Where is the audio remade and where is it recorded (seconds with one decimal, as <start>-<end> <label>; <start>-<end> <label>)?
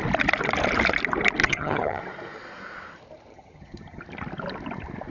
0.0-1.4 recorded; 1.4-2.0 remade; 2.0-3.3 recorded; 3.3-4.0 remade; 4.0-5.1 recorded